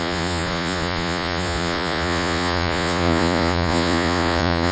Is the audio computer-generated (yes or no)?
yes